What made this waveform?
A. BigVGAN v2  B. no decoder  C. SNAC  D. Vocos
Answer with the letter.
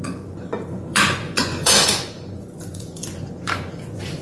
D